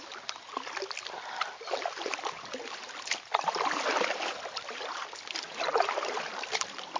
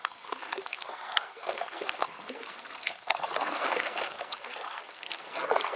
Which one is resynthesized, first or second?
second